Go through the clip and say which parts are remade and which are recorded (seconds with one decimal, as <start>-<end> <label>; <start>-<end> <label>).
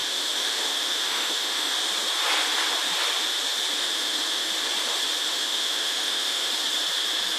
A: 0.0-1.7 remade; 1.7-3.8 recorded; 3.8-4.5 remade; 4.5-5.2 recorded; 5.2-6.5 remade; 6.5-7.4 recorded